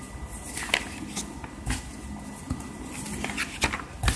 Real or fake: real